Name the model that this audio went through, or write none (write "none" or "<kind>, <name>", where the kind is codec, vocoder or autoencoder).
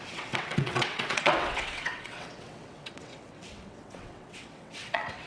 vocoder, WaveNeXt